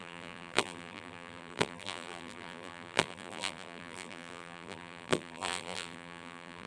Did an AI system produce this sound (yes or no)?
yes